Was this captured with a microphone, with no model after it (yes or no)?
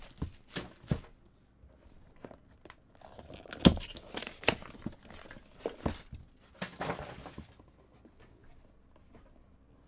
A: yes